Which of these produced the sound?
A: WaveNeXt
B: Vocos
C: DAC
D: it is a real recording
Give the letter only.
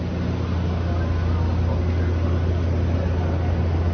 D